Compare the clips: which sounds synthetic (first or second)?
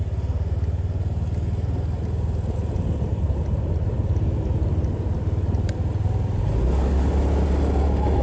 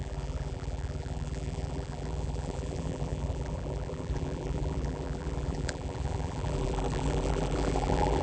second